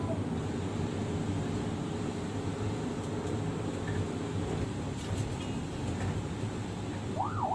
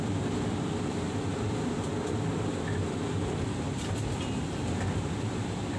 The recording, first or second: first